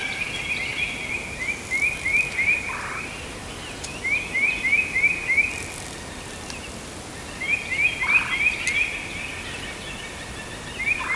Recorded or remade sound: recorded